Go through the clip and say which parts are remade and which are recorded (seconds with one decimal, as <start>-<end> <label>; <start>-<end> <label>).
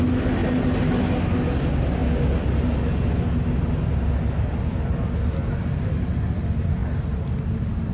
0.0-7.9 recorded